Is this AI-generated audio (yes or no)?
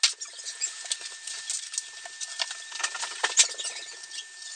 no